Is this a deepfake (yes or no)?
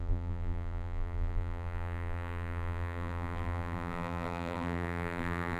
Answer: yes